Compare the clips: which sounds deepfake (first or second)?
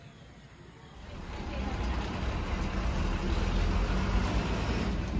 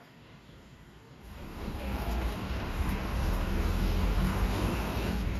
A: second